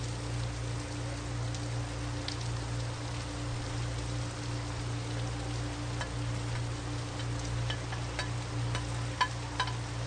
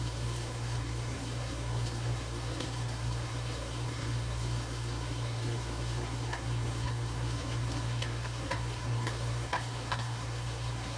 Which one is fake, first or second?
second